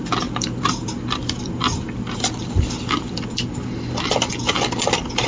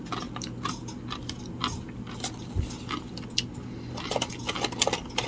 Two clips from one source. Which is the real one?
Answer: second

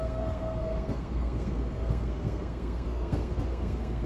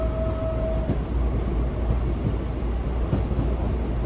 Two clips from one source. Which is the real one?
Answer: second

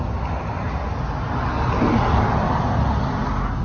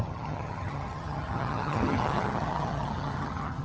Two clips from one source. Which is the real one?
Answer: first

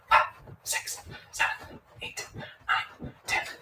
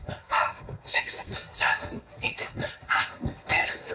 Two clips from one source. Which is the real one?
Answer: first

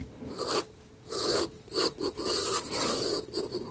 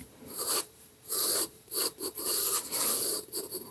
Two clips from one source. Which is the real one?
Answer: first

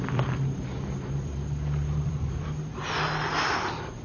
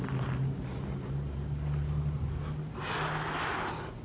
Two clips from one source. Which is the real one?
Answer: second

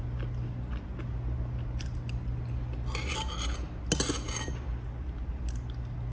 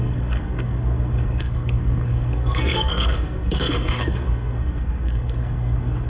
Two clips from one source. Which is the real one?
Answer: first